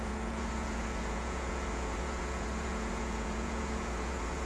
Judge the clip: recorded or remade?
remade